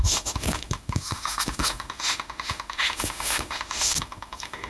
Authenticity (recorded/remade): remade